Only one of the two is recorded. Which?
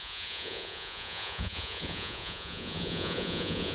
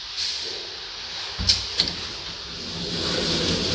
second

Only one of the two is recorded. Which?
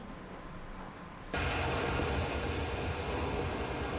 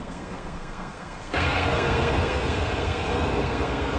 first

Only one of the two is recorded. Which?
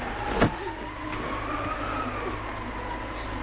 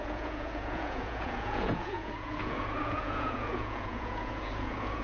first